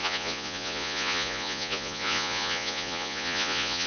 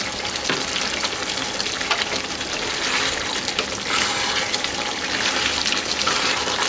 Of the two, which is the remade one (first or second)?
first